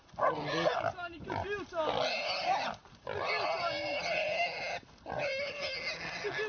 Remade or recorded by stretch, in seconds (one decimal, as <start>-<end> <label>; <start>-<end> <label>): 0.0-6.5 recorded